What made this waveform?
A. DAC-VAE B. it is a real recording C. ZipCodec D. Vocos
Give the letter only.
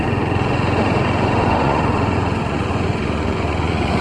D